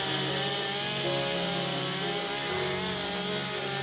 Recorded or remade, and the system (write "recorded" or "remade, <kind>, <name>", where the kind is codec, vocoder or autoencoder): recorded